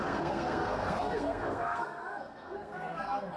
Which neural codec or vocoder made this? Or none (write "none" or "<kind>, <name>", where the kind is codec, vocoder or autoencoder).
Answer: codec, SNAC